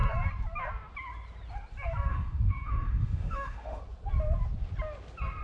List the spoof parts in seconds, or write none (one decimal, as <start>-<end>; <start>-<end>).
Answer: 2.1-3.8